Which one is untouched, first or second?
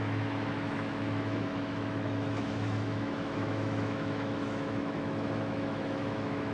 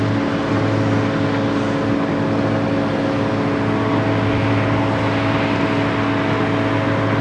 second